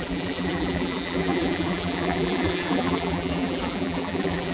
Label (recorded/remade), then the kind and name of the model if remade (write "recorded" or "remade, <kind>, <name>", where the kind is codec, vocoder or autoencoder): remade, vocoder, BigVGAN v2